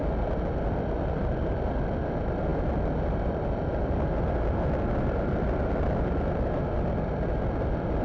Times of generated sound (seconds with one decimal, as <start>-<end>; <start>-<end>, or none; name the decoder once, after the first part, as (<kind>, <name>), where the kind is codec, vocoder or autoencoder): none